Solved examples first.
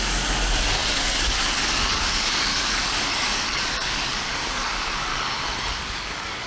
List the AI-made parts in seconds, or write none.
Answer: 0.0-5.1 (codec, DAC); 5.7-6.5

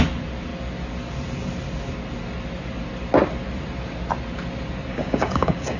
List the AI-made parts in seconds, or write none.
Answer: 4.9-5.8 (codec, DAC)

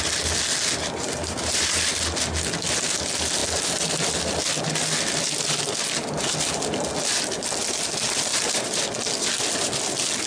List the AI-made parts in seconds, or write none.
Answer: 1.2-1.9 (vocoder, BigVGAN v2); 8.3-8.8

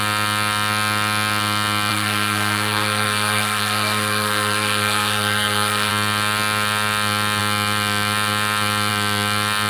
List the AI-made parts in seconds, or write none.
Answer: 1.9-5.9 (codec, SNAC)

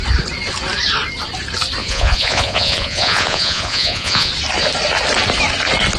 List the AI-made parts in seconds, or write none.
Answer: 1.8-4.3 (vocoder, Vocos)

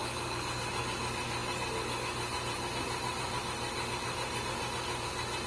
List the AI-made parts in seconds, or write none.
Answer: none